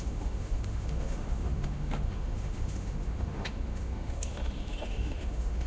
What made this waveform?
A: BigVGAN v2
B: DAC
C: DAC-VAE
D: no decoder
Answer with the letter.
C